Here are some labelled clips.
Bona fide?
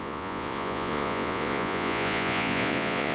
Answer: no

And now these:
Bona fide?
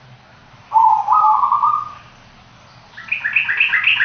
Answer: yes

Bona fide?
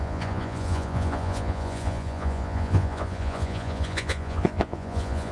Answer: no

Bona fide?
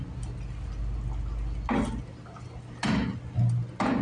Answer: yes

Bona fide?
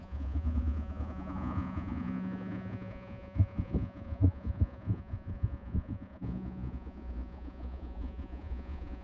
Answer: no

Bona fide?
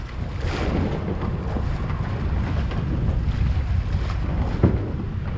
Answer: yes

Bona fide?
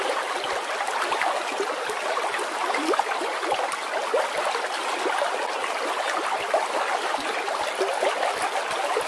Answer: yes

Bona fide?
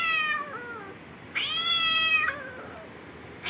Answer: yes